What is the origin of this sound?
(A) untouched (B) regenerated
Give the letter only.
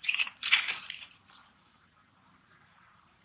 B